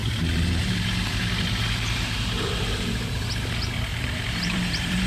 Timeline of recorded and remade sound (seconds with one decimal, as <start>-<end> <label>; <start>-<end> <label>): 0.0-3.1 remade; 3.1-3.9 recorded; 3.9-5.1 remade